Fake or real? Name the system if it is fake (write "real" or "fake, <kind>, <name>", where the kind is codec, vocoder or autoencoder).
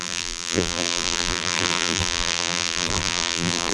fake, vocoder, BigVGAN v2